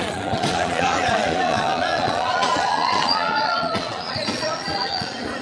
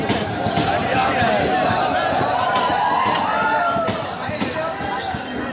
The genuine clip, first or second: second